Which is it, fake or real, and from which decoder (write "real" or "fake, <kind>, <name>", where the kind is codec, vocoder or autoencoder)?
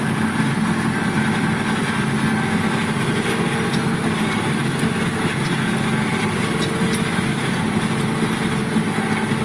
real